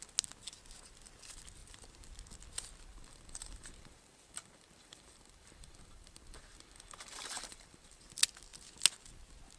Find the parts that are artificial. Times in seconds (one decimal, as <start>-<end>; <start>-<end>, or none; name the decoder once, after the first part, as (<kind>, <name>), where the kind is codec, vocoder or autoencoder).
2.9-8.0 (vocoder, BigVGAN v2)

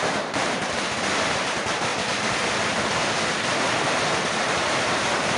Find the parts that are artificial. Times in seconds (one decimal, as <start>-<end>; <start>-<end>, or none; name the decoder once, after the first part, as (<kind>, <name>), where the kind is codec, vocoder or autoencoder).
0.0-1.9 (vocoder, BigVGAN v2); 4.3-5.4

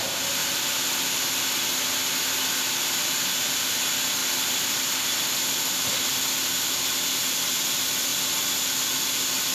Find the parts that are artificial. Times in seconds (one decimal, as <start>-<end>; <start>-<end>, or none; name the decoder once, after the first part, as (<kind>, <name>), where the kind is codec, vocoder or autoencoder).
0.4-3.1 (vocoder, BigVGAN v2); 4.2-5.8; 8.1-9.0

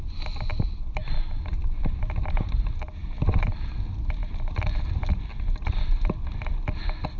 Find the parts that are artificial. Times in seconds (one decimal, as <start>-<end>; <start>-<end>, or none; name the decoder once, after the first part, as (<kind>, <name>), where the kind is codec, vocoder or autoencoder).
3.0-4.8 (vocoder, BigVGAN v2)